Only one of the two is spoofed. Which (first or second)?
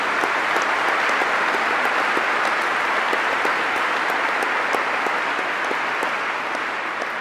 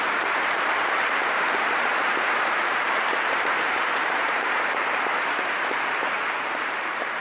second